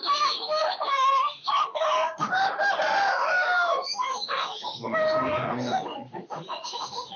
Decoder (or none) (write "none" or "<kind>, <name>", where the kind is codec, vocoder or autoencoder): autoencoder, DAC-VAE